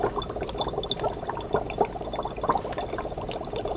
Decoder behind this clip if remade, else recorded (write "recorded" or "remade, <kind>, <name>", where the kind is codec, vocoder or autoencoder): recorded